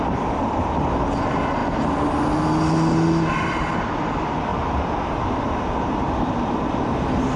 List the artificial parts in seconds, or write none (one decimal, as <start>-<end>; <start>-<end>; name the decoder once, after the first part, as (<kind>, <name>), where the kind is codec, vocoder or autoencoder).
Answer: 4.5-6.9 (vocoder, BigVGAN v2)